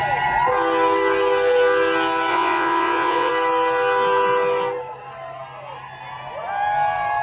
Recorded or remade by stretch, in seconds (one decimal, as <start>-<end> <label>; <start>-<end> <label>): 0.0-2.3 recorded; 2.3-3.3 remade; 3.3-7.2 recorded